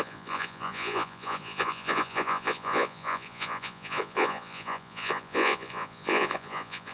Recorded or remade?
remade